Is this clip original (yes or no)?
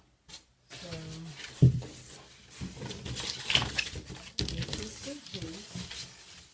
yes